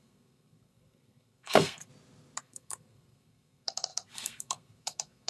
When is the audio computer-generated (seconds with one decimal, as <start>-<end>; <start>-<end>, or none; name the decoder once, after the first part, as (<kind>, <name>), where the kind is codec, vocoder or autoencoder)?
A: 0.0-1.9 (codec, SNAC); 2.4-5.3